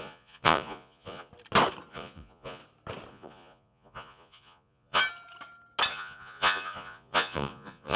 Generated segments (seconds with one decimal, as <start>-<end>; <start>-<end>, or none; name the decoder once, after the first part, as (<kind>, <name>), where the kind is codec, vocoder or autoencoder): 0.0-1.3 (vocoder, Vocos); 1.9-2.6; 3.1-5.0; 5.9-8.0

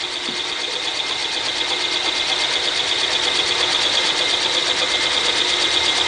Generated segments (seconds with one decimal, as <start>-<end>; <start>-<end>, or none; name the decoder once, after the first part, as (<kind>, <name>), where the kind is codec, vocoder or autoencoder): none

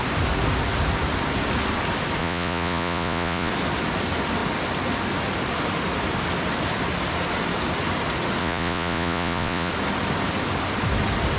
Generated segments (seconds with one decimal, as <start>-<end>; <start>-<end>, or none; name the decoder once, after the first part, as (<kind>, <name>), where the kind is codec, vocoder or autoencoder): 2.2-3.5 (vocoder, Vocos); 8.4-9.7

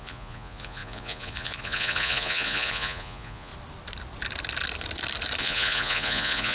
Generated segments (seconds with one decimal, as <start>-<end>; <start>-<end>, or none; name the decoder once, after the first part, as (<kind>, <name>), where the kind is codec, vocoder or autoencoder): 0.0-3.5 (vocoder, Vocos); 5.4-6.5

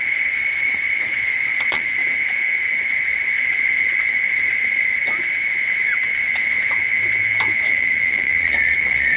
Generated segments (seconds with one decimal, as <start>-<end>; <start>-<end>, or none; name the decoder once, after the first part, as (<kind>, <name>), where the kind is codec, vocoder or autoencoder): 0.0-2.0 (vocoder, Vocos); 2.9-5.0; 7.7-9.2

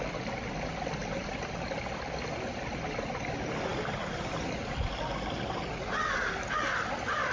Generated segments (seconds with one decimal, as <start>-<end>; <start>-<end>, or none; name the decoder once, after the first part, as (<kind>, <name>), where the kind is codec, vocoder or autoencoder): none

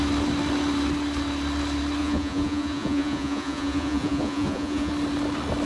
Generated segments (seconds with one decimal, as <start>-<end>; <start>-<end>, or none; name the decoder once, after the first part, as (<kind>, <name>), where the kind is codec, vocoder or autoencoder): 2.0-4.9 (vocoder, Vocos)

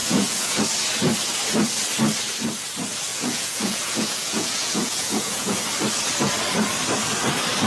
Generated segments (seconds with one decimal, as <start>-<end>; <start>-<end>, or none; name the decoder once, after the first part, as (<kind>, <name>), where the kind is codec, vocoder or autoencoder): 0.0-0.6 (vocoder, Vocos); 3.1-5.6